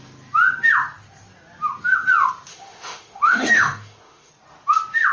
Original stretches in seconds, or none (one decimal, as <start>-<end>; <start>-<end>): 0.0-2.5; 4.3-5.1